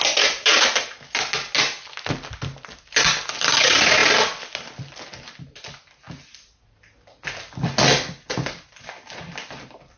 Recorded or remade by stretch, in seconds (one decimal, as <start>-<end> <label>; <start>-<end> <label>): 0.0-4.0 recorded; 4.0-5.3 remade; 5.3-10.0 recorded